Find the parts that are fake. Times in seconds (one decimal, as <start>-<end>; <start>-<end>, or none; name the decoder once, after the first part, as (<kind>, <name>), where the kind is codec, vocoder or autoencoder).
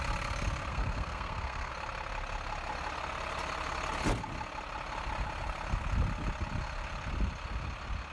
0.7-1.7 (codec, SNAC)